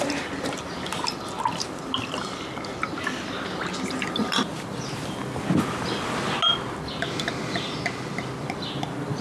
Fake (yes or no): no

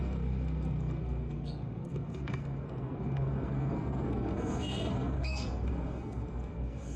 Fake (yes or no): yes